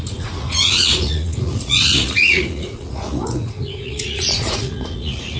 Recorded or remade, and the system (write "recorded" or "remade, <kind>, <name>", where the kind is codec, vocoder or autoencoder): remade, vocoder, Vocos